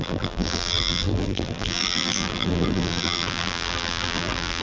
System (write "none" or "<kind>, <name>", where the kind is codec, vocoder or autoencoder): vocoder, BigVGAN v2